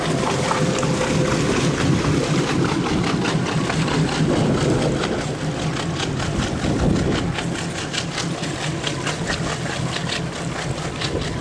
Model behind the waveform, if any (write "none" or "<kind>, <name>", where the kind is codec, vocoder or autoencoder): none